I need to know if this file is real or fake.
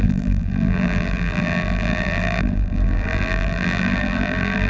fake